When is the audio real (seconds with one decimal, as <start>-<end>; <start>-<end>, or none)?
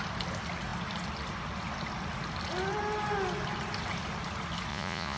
0.0-4.7